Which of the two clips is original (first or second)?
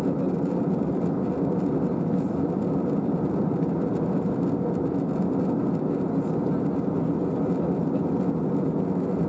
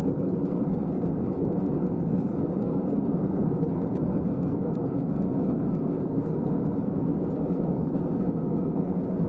first